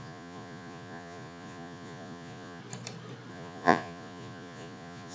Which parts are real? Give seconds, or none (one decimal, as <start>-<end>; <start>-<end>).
2.6-3.3